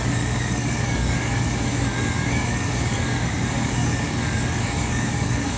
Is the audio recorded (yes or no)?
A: no